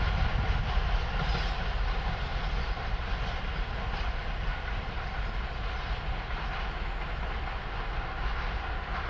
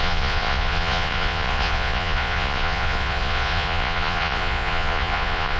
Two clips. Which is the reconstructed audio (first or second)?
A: second